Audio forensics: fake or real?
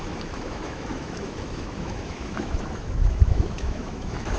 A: fake